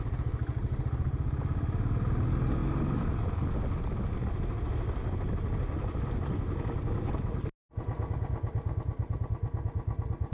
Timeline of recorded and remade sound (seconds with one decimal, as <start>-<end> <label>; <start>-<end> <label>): 0.0-10.3 recorded